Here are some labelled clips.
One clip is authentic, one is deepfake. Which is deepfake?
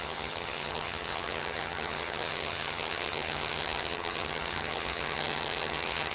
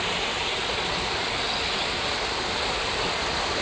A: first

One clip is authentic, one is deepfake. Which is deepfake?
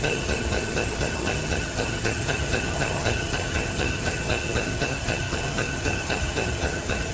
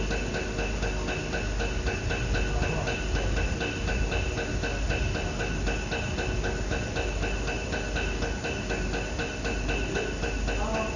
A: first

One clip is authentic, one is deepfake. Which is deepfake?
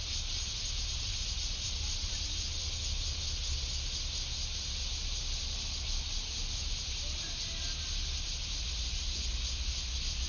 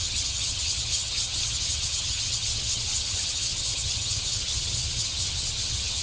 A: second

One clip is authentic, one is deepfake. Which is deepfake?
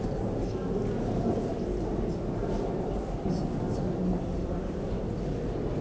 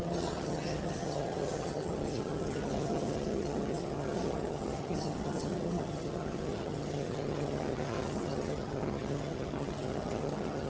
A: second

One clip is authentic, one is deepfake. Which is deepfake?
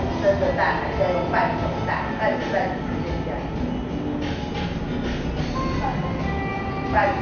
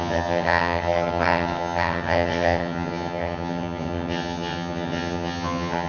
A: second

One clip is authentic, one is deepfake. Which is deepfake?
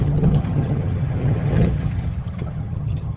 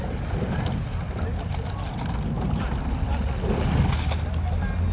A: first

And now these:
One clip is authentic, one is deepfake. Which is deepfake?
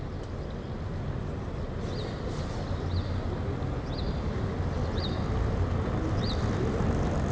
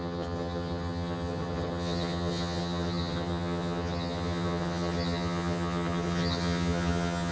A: second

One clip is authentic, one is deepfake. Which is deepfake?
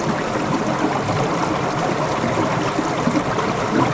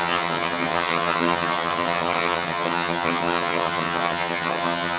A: second